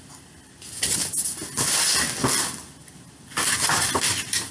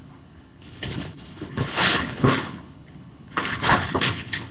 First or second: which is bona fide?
first